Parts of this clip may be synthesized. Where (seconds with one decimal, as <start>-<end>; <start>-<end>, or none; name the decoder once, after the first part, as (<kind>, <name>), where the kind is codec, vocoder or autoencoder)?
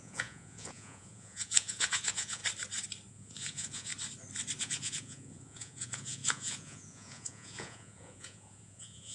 0.0-2.4 (vocoder, Vocos); 3.1-3.9; 4.6-9.1